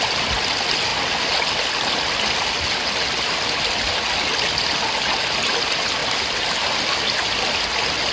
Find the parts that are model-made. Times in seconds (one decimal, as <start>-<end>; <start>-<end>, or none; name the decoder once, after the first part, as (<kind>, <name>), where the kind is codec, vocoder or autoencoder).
none